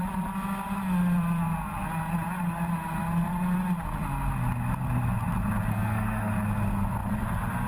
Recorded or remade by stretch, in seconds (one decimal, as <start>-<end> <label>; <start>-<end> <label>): 0.0-5.7 recorded; 5.7-6.3 remade; 6.3-7.7 recorded